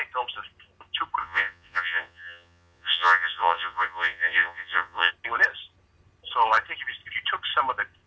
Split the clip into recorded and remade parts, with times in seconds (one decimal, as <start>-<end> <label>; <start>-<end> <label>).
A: 0.0-1.2 recorded; 1.2-5.1 remade; 5.1-8.1 recorded